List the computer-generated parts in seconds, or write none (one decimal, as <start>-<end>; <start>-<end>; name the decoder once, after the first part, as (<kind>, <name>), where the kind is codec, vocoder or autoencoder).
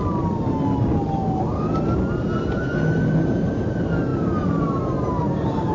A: none